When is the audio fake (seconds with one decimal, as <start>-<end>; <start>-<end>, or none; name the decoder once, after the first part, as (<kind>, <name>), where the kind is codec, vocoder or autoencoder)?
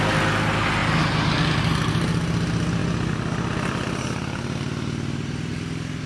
none